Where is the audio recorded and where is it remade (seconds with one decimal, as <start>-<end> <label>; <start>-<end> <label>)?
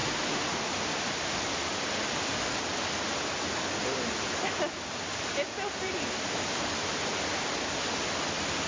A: 0.0-2.7 recorded; 2.7-6.9 remade; 6.9-8.7 recorded